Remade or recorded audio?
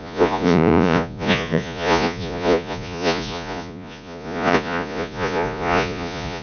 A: remade